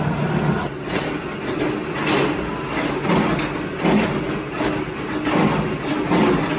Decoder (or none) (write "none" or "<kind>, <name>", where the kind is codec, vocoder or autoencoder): none